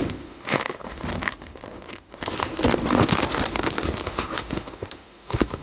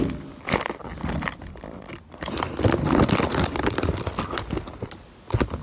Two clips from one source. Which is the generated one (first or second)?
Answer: first